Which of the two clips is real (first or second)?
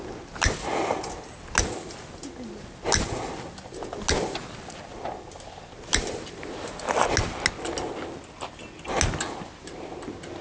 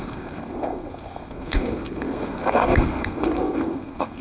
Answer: first